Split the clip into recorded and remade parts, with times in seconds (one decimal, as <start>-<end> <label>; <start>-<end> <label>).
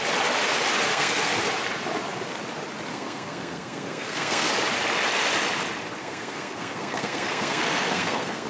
0.0-0.9 recorded; 0.9-1.4 remade; 1.4-2.9 recorded; 2.9-4.5 remade; 4.5-6.0 recorded; 6.0-8.5 remade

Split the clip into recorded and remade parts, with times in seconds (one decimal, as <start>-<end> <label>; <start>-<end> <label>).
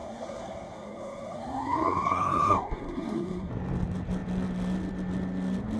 0.0-3.5 remade; 3.5-5.8 recorded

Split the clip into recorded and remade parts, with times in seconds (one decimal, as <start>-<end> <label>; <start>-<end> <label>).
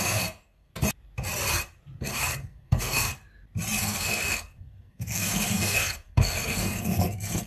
0.0-0.7 remade; 0.7-2.0 recorded; 2.0-3.1 remade; 3.1-3.8 recorded; 3.8-7.5 remade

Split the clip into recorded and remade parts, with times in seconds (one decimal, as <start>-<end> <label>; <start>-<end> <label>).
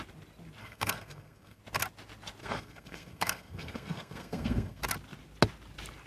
0.0-0.6 recorded; 0.6-1.6 remade; 1.6-2.4 recorded; 2.4-4.8 remade; 4.8-6.1 recorded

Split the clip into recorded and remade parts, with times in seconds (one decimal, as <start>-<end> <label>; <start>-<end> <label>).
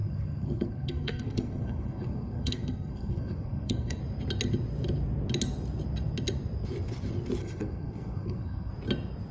0.0-4.0 remade; 4.0-7.4 recorded; 7.4-8.7 remade; 8.7-9.3 recorded